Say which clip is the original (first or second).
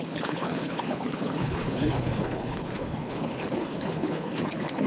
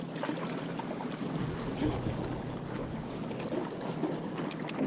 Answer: second